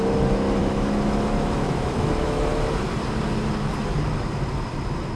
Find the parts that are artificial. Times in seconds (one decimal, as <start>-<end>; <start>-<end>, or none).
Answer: 0.6-2.5